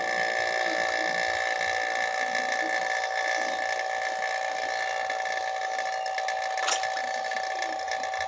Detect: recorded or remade recorded